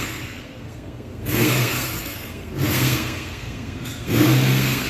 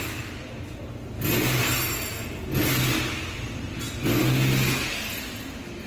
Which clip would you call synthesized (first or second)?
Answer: first